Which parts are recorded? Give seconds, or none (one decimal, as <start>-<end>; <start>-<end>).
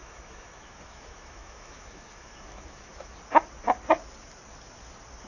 3.2-5.3